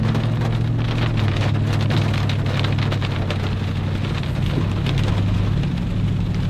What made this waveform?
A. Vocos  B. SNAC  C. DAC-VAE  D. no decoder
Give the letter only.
D